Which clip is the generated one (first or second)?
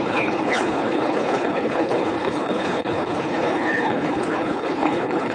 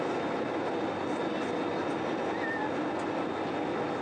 first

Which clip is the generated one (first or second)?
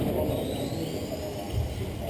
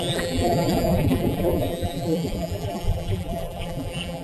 second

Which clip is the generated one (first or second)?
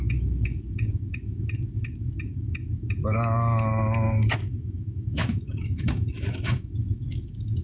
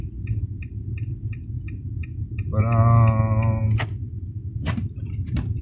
first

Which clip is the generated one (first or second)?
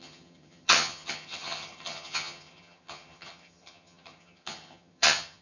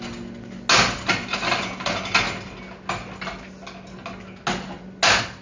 first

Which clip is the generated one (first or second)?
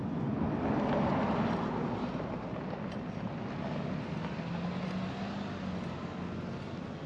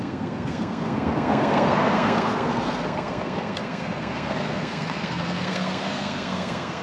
second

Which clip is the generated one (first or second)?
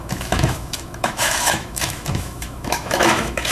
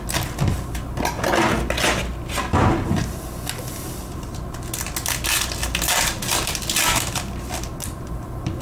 first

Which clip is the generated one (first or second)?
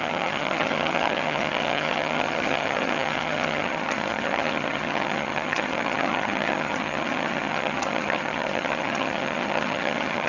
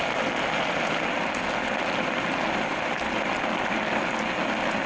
first